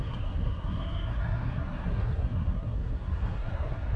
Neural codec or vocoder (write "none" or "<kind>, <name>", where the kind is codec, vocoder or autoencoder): codec, SNAC